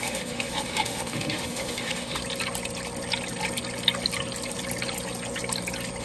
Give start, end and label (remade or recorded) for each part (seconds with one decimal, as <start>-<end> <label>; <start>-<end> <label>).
0.0-2.2 remade; 2.2-6.0 recorded